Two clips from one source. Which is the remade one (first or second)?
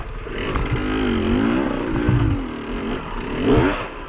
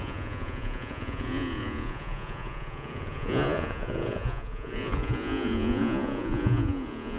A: second